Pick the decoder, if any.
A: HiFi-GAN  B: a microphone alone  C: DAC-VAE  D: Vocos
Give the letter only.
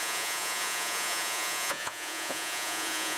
D